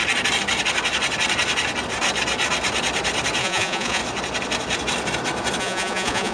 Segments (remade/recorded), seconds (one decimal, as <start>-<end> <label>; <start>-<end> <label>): 0.0-3.4 recorded; 3.4-4.0 remade; 4.0-5.6 recorded; 5.6-6.3 remade